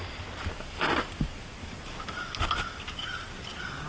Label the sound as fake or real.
real